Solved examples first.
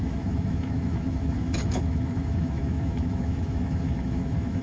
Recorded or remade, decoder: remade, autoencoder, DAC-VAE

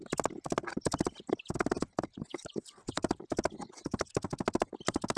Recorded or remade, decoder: recorded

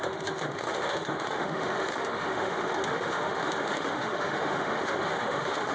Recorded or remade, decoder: remade, autoencoder, DAC-VAE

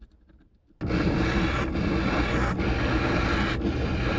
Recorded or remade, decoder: recorded